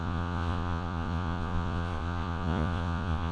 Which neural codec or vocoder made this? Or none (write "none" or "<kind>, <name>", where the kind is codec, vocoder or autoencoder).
vocoder, Vocos